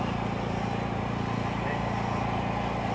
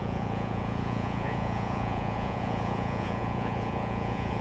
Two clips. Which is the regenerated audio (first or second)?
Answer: second